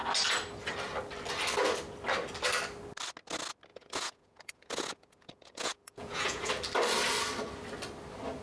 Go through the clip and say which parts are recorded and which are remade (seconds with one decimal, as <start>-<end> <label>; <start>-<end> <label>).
0.0-3.7 recorded; 3.7-6.5 remade; 6.5-8.4 recorded